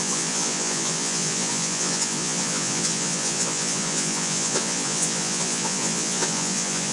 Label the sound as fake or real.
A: fake